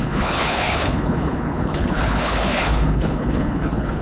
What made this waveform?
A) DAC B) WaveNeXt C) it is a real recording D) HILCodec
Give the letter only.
D